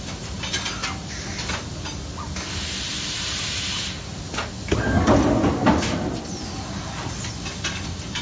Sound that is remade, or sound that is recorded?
recorded